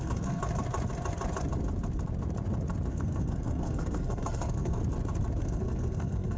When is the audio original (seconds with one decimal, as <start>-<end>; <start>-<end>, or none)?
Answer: 0.4-2.9; 4.8-5.4